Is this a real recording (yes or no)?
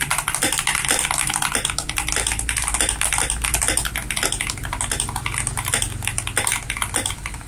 yes